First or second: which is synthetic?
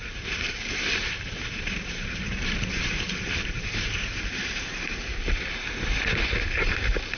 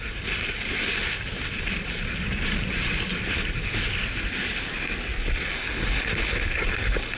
first